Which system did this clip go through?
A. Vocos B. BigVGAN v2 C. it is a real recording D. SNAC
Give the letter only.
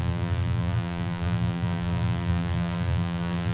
B